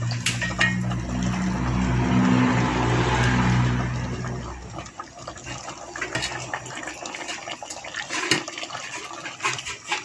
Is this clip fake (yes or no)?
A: no